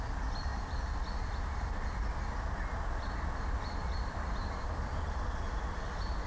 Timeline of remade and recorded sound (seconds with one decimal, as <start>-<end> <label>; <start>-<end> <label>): 0.0-6.3 recorded